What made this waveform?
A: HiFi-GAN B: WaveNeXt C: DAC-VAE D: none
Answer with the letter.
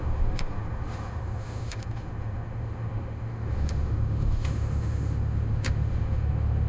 C